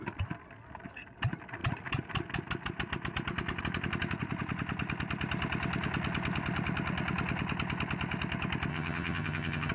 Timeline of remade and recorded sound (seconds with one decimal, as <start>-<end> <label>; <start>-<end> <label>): 0.0-8.7 recorded; 8.7-9.7 remade